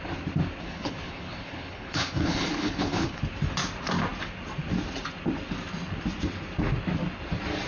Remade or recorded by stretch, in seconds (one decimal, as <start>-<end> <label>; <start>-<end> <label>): 0.0-0.6 recorded; 0.6-3.2 remade; 3.2-7.7 recorded